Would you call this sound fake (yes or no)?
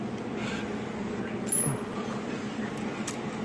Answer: no